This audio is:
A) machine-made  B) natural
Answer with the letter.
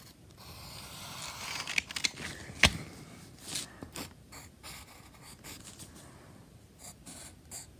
B